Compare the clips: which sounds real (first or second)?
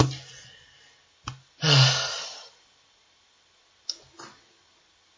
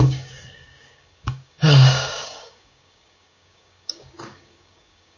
first